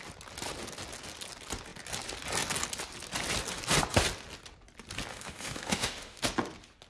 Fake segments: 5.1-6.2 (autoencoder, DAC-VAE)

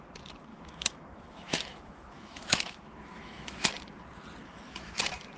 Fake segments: 0.5-3.7 (autoencoder, DAC-VAE); 4.4-5.0

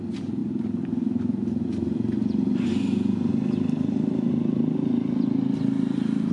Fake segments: none

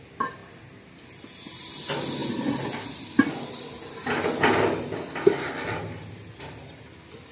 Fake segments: none

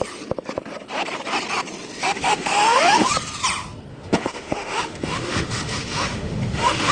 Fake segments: 2.0-3.1 (autoencoder, DAC-VAE); 3.9-6.9

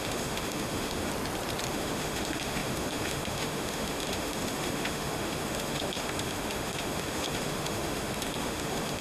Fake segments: 0.0-1.1 (autoencoder, DAC-VAE); 1.7-9.0